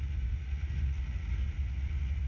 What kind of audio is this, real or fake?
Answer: fake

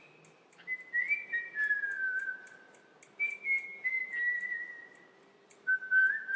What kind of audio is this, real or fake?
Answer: real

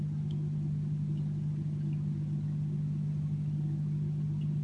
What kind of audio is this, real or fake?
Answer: real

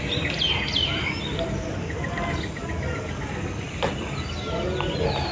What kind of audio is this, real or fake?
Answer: real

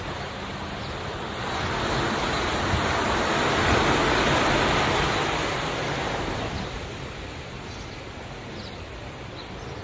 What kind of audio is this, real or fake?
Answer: real